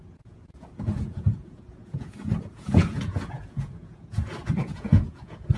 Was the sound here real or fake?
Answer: fake